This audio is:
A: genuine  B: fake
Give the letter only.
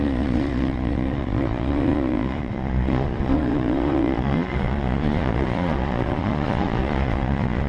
B